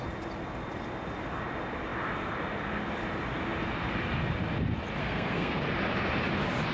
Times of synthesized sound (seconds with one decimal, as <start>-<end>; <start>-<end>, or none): 5.0-5.6